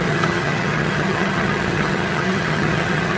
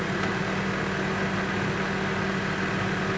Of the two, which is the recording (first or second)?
second